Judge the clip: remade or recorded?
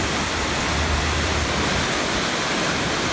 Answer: remade